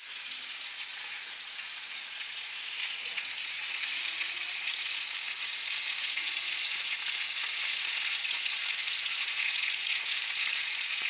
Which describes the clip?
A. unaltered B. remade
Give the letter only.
B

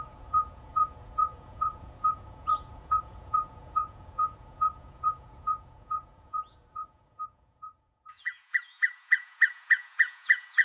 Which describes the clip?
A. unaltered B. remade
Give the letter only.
B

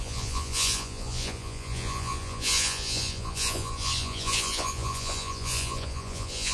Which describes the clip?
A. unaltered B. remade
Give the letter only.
B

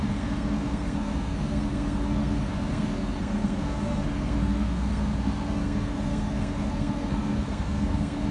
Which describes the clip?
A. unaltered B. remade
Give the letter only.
B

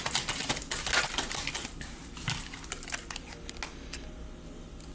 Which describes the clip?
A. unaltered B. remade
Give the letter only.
A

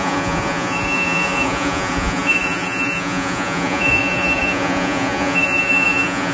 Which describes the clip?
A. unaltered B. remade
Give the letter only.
B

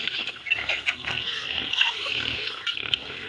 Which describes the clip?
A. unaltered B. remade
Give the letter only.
B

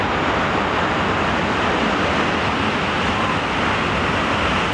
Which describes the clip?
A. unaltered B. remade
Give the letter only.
A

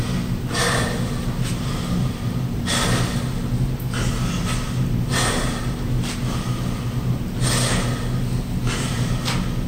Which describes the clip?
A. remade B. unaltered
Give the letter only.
B